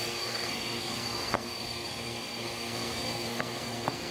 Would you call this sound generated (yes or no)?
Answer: yes